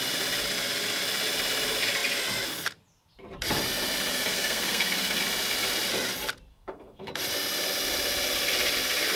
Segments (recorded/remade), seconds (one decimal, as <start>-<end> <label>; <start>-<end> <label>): 0.0-4.1 recorded; 4.1-5.2 remade; 5.2-6.5 recorded; 6.5-7.1 remade; 7.1-9.2 recorded